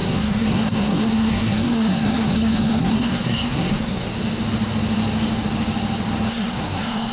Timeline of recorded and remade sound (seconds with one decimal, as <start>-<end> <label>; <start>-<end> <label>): 0.0-4.1 remade; 4.1-6.3 recorded; 6.3-7.1 remade